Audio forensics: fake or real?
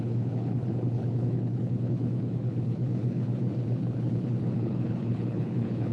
fake